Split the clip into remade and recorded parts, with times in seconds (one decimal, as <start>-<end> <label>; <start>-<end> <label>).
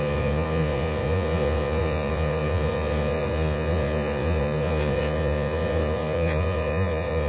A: 0.0-7.3 remade